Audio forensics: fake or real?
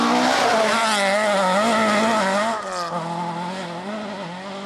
real